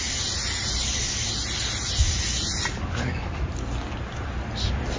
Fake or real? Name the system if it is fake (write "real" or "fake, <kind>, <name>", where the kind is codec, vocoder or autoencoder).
real